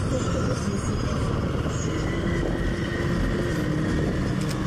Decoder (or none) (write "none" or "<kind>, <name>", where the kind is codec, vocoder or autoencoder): none